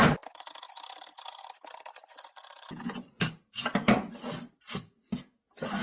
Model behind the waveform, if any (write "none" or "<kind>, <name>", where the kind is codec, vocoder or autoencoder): none